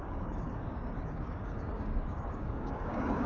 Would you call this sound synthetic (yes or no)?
yes